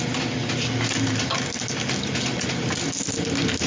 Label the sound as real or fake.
real